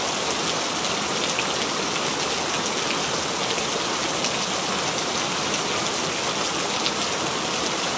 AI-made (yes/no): no